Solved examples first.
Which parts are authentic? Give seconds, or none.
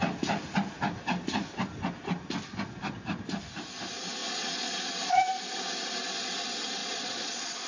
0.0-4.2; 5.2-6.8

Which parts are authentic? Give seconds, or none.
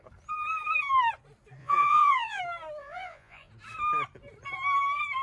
0.0-1.6; 2.4-2.8; 3.5-5.2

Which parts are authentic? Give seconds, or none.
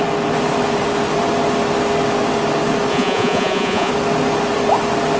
0.0-2.9; 3.9-5.2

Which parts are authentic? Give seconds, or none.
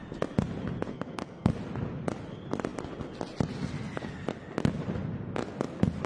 0.0-0.9; 1.5-6.1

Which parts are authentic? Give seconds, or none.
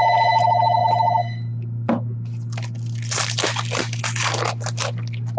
0.0-5.4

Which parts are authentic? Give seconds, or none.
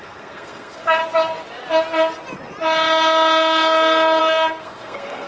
1.0-4.2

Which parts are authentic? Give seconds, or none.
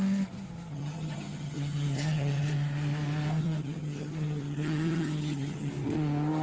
0.0-0.7; 2.4-3.4; 5.7-6.4